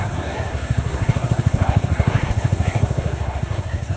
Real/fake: fake